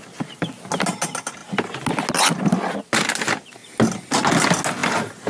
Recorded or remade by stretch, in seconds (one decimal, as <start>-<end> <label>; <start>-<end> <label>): 0.0-5.3 recorded

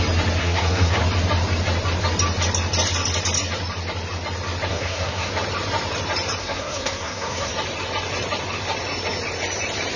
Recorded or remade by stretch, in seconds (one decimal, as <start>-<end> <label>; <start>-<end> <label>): 0.0-0.4 recorded; 0.4-1.0 remade; 1.0-4.7 recorded; 4.7-5.3 remade; 5.3-6.4 recorded; 6.4-7.5 remade; 7.5-10.0 recorded

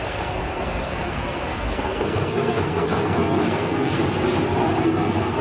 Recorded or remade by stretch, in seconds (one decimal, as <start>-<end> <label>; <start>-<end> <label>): 0.0-4.0 remade; 4.0-4.8 recorded; 4.8-5.4 remade

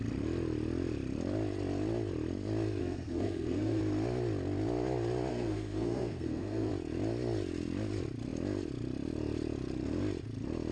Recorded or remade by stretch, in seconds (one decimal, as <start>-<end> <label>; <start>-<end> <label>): 0.0-2.8 recorded; 2.8-3.8 remade; 3.8-5.3 recorded; 5.3-6.7 remade; 6.7-10.7 recorded

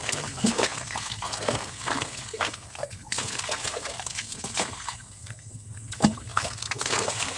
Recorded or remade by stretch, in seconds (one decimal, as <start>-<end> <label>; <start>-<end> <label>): 0.0-7.4 remade

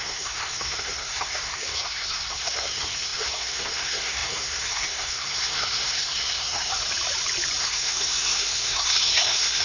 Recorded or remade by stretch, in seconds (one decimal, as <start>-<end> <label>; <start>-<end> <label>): 0.0-6.7 remade; 6.7-7.6 recorded; 7.6-9.6 remade

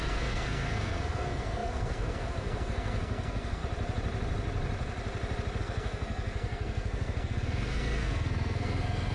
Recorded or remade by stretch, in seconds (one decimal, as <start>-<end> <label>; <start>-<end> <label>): 0.0-3.6 remade; 3.6-5.6 recorded; 5.6-9.1 remade

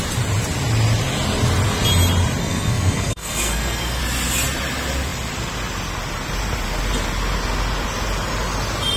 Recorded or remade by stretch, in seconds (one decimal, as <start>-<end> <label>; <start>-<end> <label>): 0.0-2.4 recorded; 2.4-4.0 remade; 4.0-9.0 recorded